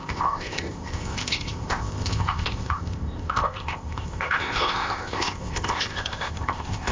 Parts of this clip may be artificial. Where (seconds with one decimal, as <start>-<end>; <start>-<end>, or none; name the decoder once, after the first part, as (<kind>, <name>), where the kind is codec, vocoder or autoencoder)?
0.0-6.9 (codec, ZipCodec)